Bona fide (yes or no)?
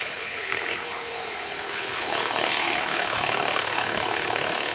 no